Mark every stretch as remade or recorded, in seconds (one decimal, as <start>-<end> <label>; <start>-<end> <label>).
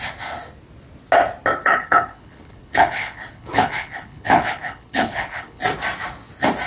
0.0-1.6 recorded; 1.6-5.6 remade; 5.6-6.7 recorded